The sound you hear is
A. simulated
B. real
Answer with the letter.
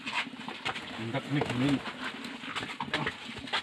B